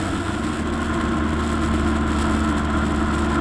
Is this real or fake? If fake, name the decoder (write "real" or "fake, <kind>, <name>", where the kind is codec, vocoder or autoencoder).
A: real